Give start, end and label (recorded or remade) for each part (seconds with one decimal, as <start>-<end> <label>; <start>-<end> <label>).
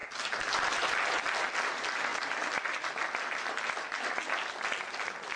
0.0-5.4 recorded